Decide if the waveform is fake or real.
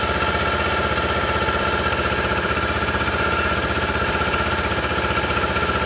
fake